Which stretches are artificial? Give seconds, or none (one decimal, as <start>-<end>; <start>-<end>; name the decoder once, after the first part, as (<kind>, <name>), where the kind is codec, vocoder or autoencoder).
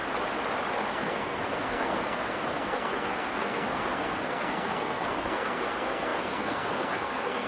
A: 0.9-7.5 (codec, SNAC)